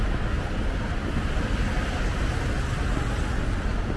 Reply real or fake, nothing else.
real